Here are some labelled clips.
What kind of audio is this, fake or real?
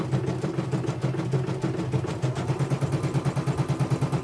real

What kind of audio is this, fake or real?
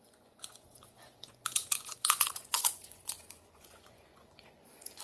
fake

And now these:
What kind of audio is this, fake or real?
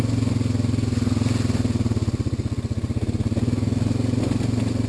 real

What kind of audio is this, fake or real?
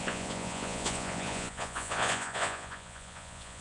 fake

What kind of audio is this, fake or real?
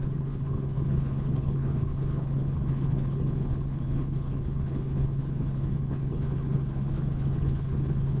fake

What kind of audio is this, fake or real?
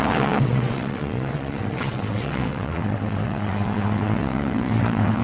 fake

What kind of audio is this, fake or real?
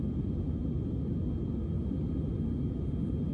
real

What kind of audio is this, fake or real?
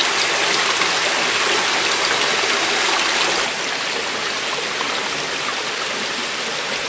real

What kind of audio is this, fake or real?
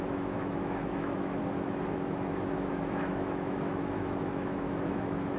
fake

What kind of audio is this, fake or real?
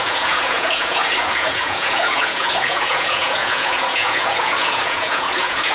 fake